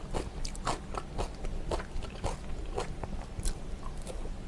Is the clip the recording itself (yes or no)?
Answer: yes